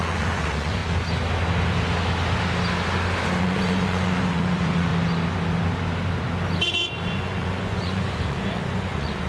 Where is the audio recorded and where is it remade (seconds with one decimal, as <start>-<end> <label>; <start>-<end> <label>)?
0.0-0.8 remade; 0.8-3.4 recorded; 3.4-4.9 remade; 4.9-6.6 recorded; 6.6-9.3 remade